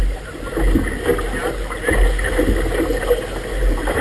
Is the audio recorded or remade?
recorded